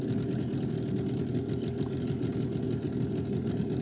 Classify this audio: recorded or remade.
recorded